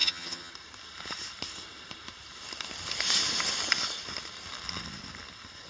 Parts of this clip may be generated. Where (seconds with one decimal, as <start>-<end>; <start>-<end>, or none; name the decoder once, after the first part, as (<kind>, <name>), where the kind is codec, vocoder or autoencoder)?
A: 0.0-0.5 (vocoder, HiFi-GAN)